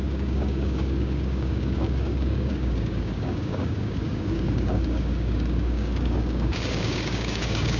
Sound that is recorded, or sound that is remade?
remade